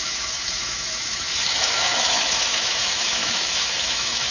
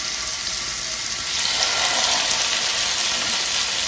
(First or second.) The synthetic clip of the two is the first